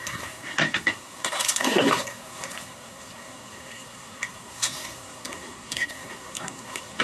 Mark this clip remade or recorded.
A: remade